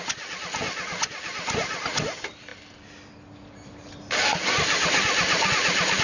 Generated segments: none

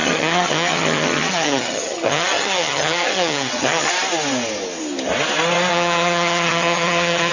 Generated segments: 0.0-3.9; 5.7-7.3